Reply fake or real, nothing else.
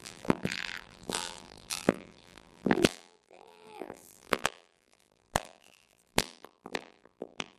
fake